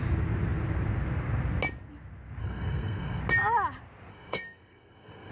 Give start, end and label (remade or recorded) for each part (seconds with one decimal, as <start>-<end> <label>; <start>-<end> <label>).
0.0-2.4 recorded; 2.4-3.2 remade; 3.2-4.1 recorded; 4.1-5.3 remade